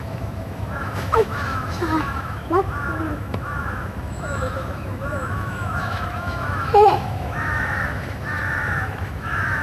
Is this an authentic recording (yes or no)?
no